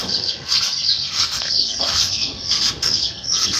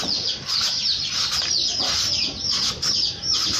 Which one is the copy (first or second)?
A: first